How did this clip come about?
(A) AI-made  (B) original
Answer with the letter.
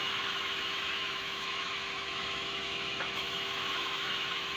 A